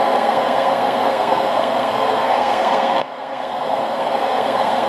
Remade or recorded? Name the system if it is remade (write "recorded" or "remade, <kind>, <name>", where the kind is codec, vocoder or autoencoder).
remade, codec, SNAC